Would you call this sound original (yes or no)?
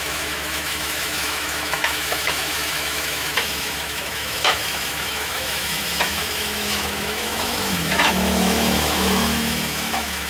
no